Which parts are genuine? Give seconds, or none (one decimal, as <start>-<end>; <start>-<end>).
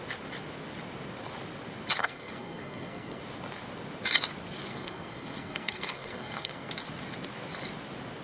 0.0-2.0; 3.2-4.7; 6.7-8.2